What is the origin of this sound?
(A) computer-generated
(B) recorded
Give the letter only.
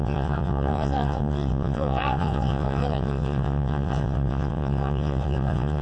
A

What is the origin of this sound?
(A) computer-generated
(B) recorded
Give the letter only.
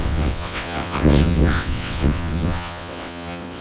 A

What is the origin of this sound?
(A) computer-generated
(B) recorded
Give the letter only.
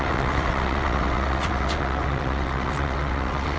A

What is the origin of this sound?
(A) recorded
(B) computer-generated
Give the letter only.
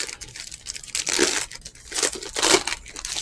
A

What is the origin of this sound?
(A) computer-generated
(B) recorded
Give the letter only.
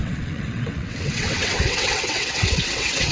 A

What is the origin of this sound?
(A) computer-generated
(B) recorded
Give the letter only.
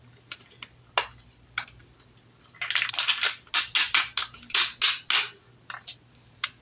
B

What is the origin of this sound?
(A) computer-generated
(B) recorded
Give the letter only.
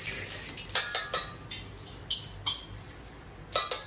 B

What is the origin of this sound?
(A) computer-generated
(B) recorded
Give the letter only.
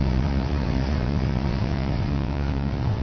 A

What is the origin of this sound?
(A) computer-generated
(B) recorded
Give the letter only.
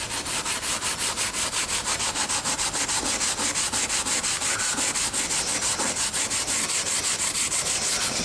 B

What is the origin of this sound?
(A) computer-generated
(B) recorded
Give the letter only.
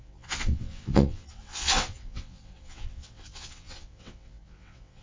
A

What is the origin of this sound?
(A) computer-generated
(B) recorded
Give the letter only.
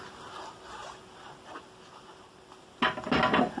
B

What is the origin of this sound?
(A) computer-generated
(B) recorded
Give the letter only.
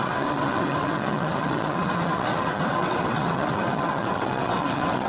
A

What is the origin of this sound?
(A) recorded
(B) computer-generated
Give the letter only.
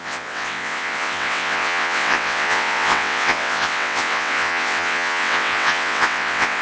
B